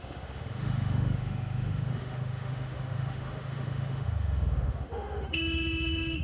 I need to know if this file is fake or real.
fake